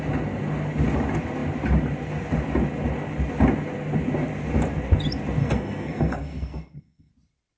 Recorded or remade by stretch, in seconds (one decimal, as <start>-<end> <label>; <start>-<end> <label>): 0.0-5.4 recorded; 5.4-7.1 remade; 7.1-7.6 recorded